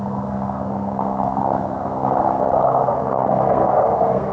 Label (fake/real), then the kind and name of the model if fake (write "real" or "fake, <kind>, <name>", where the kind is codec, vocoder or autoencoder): fake, codec, SNAC